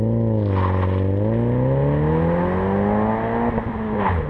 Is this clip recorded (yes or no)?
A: yes